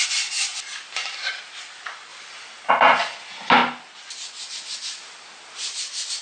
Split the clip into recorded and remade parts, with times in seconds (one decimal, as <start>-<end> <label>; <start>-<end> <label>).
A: 0.0-6.2 recorded